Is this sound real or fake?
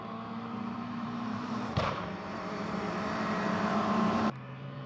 fake